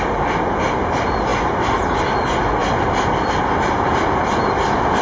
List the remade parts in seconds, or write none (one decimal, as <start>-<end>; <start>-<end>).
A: 2.6-3.4